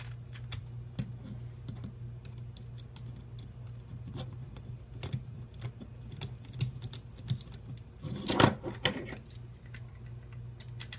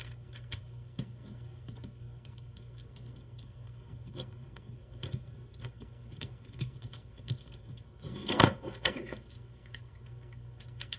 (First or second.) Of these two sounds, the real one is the first